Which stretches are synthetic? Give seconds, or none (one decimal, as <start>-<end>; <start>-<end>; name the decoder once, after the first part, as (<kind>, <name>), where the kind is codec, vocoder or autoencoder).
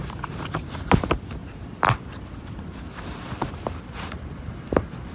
1.4-4.5 (vocoder, BigVGAN v2)